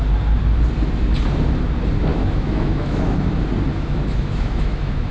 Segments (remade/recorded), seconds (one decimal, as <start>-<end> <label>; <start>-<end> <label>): 0.0-2.1 recorded; 2.1-3.3 remade; 3.3-3.7 recorded; 3.7-5.1 remade